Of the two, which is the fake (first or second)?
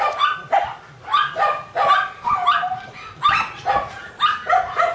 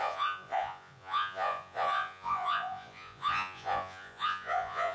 second